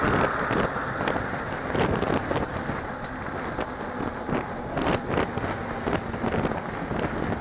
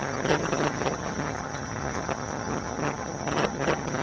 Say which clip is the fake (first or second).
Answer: second